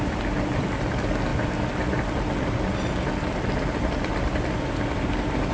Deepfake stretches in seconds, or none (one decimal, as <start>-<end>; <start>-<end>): none